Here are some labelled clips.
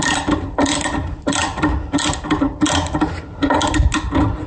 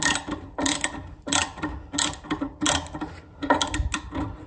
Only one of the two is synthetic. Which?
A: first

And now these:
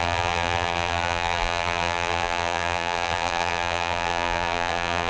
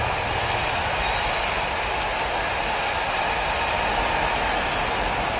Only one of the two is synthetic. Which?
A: first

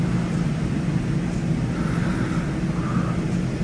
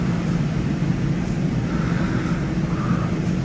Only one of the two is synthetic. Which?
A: second